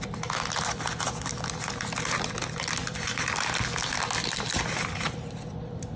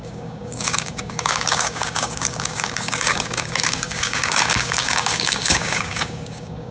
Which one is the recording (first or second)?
first